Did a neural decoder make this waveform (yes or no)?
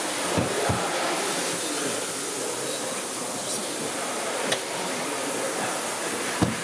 no